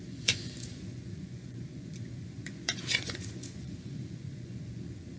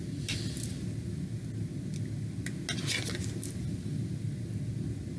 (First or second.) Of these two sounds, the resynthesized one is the first